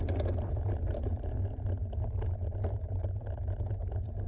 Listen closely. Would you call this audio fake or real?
real